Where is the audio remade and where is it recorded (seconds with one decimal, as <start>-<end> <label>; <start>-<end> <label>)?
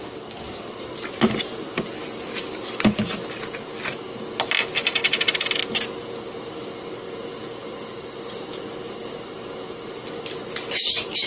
0.0-11.3 recorded